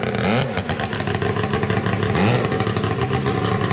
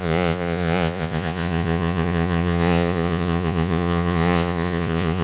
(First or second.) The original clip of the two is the first